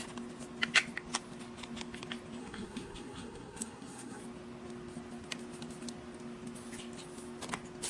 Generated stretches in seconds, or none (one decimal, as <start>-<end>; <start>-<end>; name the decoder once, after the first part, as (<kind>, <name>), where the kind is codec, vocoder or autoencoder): 2.4-4.2 (codec, SNAC)